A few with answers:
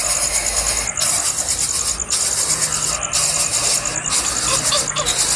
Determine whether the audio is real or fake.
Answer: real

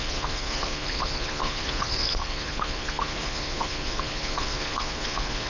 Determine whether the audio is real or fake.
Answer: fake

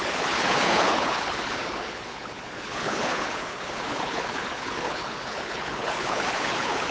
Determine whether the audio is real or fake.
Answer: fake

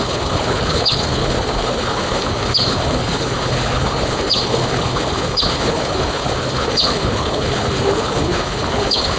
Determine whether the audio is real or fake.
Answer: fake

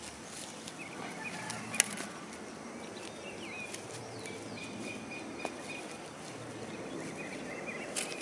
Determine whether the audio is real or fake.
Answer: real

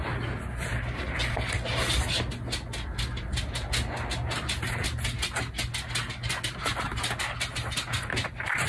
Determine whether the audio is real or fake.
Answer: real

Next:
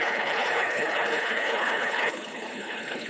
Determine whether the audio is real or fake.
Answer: fake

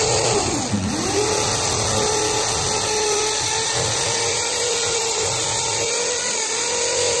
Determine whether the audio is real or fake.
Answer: real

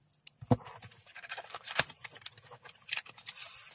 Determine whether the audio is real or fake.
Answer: real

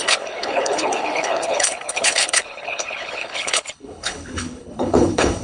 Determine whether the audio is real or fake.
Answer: fake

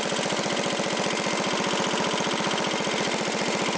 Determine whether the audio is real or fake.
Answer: real